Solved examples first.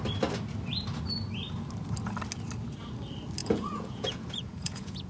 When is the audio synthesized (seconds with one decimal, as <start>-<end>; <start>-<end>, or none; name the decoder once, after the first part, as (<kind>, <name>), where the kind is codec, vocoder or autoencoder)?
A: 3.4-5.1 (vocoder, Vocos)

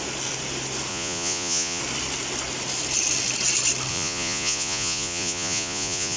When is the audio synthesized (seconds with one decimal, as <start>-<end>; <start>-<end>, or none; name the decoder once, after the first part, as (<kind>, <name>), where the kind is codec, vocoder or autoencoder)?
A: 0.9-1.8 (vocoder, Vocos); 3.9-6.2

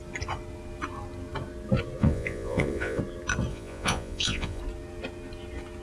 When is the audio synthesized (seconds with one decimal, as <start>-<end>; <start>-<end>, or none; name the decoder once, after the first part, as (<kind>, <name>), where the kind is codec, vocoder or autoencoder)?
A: 2.0-3.0 (vocoder, Vocos); 3.5-4.6

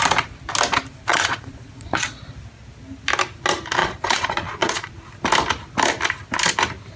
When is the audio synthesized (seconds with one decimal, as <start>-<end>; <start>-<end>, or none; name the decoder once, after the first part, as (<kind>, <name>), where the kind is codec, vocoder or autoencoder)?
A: 1.1-2.2 (vocoder, Vocos); 3.8-4.9

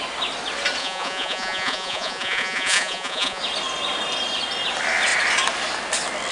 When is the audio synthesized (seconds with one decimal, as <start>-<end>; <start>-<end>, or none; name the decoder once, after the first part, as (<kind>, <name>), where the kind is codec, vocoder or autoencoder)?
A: 0.8-3.4 (vocoder, Vocos)

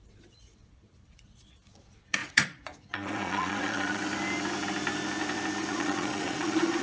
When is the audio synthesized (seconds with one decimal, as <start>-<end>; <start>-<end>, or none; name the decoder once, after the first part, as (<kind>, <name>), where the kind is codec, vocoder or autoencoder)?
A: 0.0-4.0 (vocoder, Vocos); 5.7-6.8

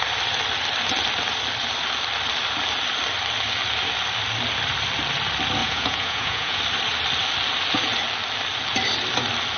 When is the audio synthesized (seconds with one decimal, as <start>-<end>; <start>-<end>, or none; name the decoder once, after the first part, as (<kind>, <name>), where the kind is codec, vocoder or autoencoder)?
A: 5.6-6.6 (vocoder, Vocos)

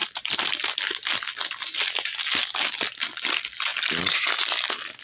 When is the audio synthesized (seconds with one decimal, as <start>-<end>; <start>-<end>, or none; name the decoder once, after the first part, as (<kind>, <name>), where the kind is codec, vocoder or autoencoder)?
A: none